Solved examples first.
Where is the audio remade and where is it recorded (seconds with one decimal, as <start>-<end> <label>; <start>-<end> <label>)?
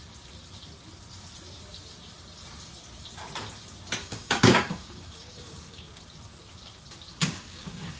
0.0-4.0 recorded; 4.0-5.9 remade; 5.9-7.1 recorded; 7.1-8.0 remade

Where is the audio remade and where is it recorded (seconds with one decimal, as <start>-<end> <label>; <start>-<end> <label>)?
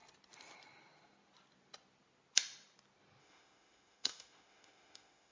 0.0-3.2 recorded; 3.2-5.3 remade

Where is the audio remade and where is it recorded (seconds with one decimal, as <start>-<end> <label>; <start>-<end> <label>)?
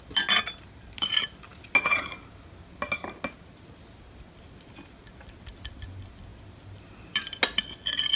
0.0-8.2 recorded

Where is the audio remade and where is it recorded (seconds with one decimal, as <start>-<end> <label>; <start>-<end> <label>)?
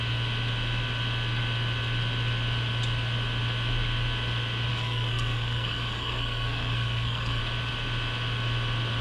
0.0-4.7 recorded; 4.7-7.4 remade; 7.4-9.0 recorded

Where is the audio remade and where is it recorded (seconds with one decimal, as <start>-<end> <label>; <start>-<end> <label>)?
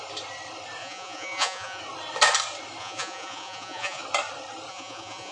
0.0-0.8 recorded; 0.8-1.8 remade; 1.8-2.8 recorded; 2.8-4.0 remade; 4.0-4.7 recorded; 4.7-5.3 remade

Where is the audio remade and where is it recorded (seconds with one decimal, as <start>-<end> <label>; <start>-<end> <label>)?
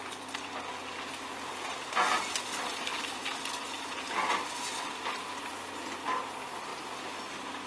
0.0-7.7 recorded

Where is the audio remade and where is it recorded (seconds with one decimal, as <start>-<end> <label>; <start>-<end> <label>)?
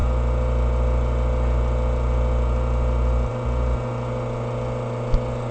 0.0-5.5 recorded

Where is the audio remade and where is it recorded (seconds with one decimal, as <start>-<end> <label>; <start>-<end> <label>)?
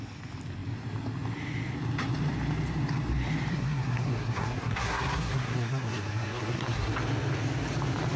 0.0-3.5 recorded; 3.5-6.9 remade; 6.9-8.2 recorded